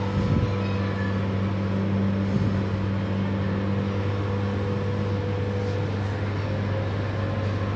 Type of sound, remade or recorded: recorded